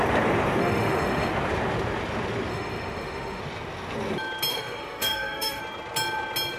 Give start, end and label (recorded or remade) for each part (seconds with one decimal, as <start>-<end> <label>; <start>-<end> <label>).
0.0-0.6 recorded; 0.6-1.3 remade; 1.3-2.5 recorded; 2.5-3.4 remade; 3.4-4.5 recorded; 4.5-5.6 remade; 5.6-6.6 recorded